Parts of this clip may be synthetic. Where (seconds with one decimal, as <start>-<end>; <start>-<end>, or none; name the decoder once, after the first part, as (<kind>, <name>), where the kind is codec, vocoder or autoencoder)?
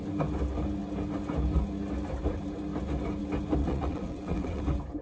3.6-4.6 (vocoder, WaveNeXt)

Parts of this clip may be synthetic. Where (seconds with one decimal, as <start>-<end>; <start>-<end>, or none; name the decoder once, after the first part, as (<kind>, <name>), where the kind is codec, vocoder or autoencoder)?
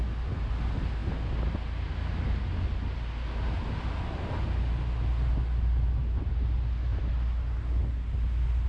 none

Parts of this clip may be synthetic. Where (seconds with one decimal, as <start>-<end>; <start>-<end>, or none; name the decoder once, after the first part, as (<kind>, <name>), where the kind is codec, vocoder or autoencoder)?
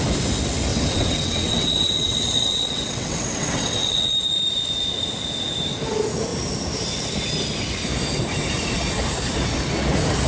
0.7-4.1 (vocoder, WaveNeXt)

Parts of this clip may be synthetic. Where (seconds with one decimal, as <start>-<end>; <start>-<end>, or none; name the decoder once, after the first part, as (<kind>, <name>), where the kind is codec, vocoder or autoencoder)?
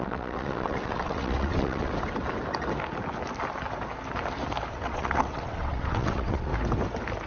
0.0-1.9 (vocoder, WaveNeXt); 4.7-6.5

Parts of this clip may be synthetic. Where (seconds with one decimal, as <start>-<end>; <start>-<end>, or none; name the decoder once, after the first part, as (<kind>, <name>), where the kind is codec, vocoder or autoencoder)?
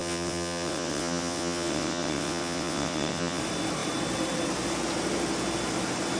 0.0-3.4 (vocoder, WaveNeXt)